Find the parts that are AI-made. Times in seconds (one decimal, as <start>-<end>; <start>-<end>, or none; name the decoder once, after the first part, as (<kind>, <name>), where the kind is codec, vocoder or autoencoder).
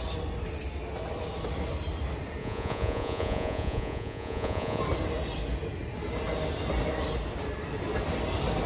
2.4-4.8 (vocoder, Vocos)